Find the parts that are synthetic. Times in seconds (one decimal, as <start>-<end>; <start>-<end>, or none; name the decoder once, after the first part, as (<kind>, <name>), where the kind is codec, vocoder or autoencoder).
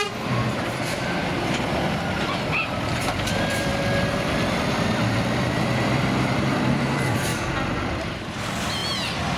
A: 0.0-8.8 (vocoder, BigVGAN v2)